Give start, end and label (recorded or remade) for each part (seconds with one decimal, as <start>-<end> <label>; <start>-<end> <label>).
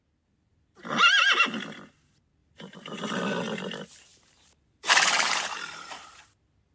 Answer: 0.0-2.4 recorded; 2.4-3.2 remade; 3.2-4.1 recorded; 4.1-6.2 remade; 6.2-6.7 recorded